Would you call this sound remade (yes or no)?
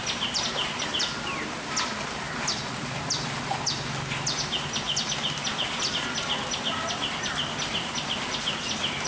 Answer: no